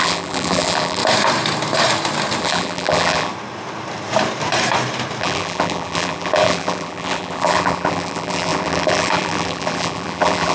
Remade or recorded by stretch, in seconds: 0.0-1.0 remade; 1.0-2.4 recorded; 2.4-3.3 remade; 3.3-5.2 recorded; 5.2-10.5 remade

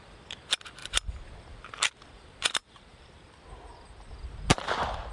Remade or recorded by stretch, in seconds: 0.0-2.6 recorded; 2.6-4.1 remade; 4.1-5.1 recorded

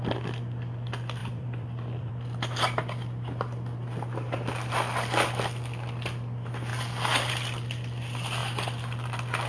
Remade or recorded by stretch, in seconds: 0.0-1.2 recorded; 1.2-2.1 remade; 2.1-9.5 recorded

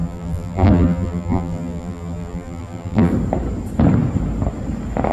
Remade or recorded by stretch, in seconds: 0.0-3.1 remade; 3.1-5.1 recorded

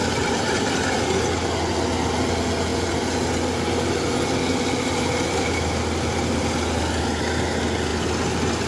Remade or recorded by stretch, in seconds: 0.0-0.7 remade; 0.7-8.7 recorded

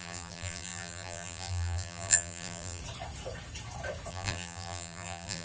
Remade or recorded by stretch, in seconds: 0.0-2.8 remade; 2.8-4.1 recorded; 4.1-5.4 remade

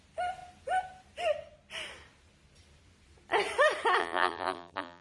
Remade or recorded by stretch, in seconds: 0.0-4.0 recorded; 4.0-5.0 remade